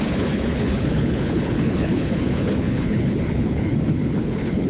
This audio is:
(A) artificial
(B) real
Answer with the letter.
A